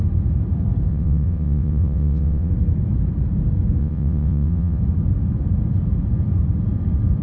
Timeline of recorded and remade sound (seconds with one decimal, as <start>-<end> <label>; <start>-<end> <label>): 0.0-0.9 recorded; 0.9-2.5 remade; 2.5-3.8 recorded; 3.8-4.8 remade; 4.8-7.2 recorded

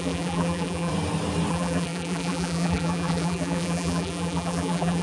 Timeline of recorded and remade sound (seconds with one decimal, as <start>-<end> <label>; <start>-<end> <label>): 0.0-0.9 remade; 0.9-1.5 recorded; 1.5-5.0 remade

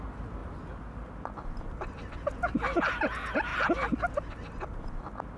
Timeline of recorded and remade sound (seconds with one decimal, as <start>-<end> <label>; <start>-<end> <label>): 0.0-0.4 recorded; 0.4-2.9 remade; 2.9-3.5 recorded; 3.5-4.1 remade; 4.1-5.4 recorded

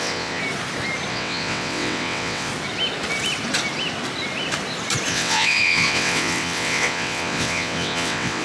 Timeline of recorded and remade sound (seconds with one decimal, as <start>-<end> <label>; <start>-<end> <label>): 0.0-0.4 remade; 0.4-1.1 recorded; 1.1-2.5 remade; 2.5-5.1 recorded; 5.1-8.4 remade

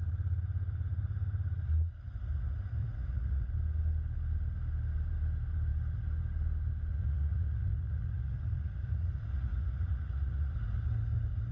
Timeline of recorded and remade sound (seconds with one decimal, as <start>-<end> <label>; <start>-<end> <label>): 0.0-2.8 recorded; 2.8-3.5 remade; 3.5-6.9 recorded; 6.9-10.5 remade; 10.5-11.5 recorded